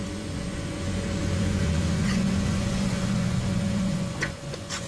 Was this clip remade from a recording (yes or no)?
yes